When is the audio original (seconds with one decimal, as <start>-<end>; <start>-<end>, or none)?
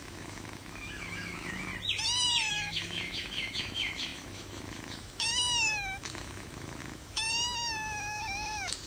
1.7-2.5